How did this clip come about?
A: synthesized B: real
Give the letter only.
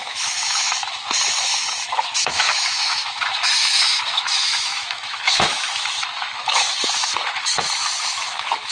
A